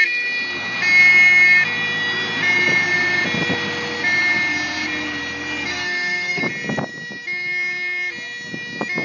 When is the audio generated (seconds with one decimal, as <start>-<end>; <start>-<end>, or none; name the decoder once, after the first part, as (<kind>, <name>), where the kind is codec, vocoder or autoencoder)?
5.7-6.4 (codec, SNAC)